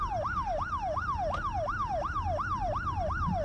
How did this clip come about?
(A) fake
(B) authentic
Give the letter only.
A